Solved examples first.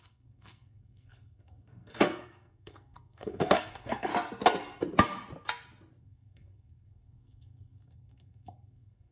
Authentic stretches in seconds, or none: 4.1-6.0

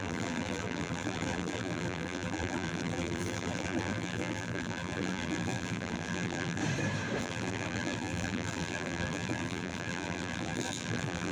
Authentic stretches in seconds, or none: 6.6-7.2